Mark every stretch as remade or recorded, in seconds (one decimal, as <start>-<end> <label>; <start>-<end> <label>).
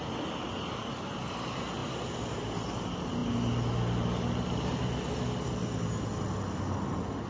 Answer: 0.0-7.3 recorded